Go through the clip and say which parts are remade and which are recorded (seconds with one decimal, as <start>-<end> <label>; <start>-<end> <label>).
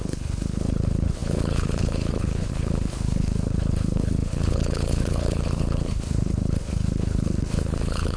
0.0-8.2 remade